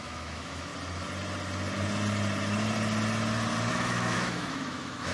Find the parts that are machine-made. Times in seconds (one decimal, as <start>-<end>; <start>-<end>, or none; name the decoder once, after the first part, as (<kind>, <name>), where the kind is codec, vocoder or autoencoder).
0.0-0.7 (autoencoder, DAC-VAE); 3.7-5.1